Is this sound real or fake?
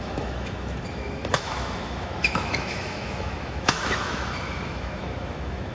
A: fake